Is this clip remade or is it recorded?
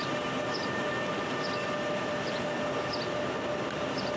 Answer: recorded